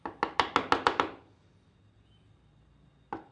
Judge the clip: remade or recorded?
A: recorded